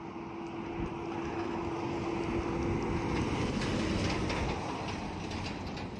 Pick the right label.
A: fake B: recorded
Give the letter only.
B